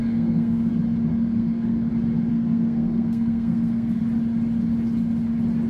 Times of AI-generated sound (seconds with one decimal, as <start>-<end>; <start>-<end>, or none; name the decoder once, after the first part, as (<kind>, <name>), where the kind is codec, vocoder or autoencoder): 0.0-0.7 (codec, SNAC); 1.1-1.9; 2.3-4.0